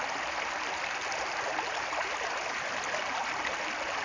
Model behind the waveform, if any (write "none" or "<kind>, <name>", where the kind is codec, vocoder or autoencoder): none